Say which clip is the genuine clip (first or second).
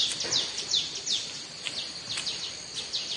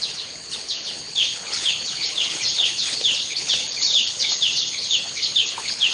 first